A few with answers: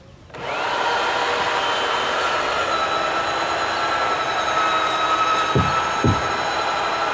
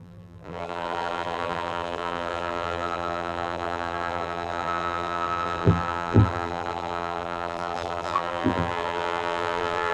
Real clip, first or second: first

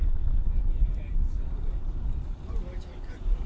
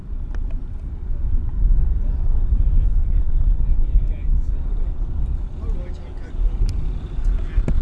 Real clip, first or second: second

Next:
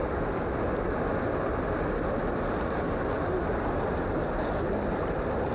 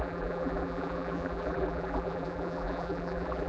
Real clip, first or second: first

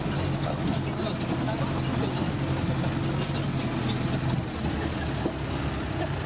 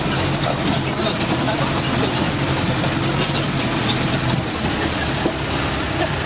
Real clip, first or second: first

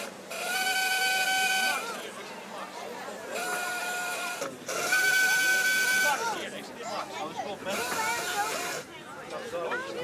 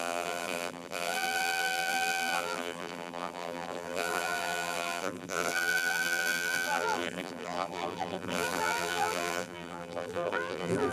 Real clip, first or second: first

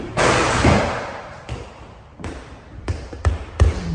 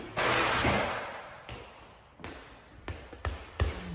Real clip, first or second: second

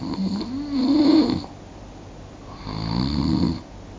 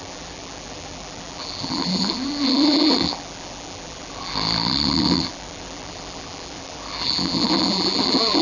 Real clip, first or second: first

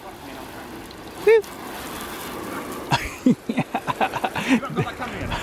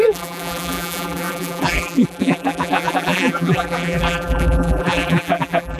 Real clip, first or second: first